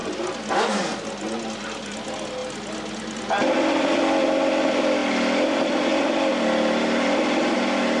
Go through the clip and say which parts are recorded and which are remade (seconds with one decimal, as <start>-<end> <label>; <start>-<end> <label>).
0.0-8.0 recorded